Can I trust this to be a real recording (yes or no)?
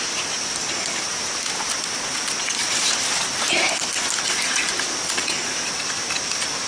yes